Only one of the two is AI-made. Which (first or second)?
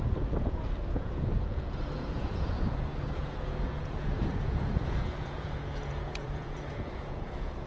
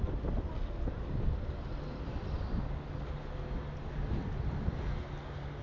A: first